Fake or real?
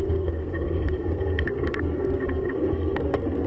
fake